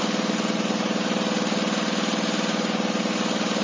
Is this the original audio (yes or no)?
yes